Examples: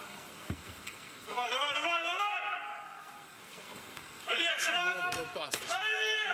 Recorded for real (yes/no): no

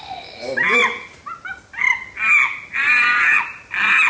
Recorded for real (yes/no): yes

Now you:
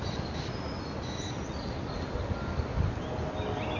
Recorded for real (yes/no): yes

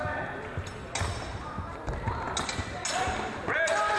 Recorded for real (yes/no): yes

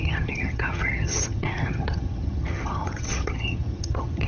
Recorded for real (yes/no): no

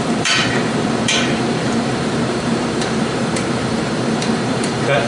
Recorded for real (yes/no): no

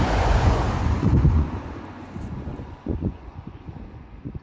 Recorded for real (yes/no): no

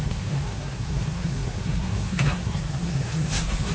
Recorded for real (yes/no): no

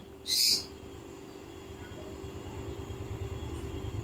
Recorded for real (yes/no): yes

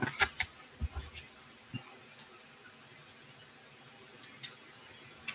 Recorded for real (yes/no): yes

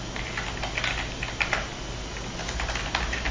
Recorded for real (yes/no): yes